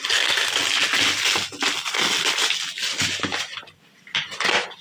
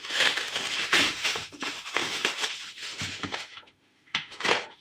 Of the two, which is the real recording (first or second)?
first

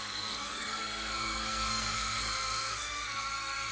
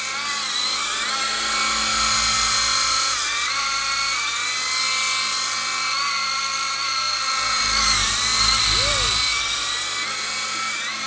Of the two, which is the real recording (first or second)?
second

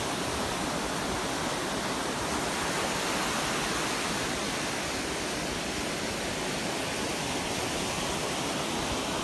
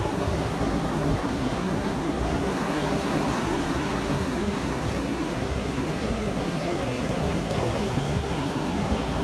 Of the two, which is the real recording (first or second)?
first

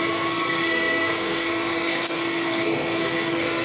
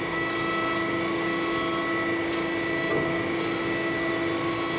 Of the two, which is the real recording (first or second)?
second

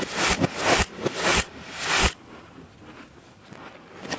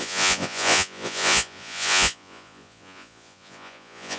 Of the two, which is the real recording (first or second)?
first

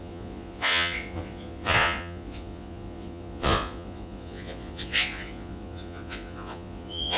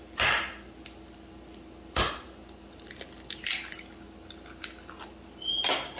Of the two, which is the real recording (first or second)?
second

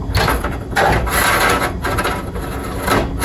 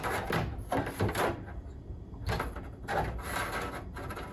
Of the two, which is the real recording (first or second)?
first